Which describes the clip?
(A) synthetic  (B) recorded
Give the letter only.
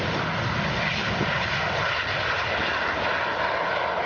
B